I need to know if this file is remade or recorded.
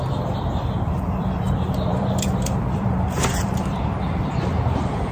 remade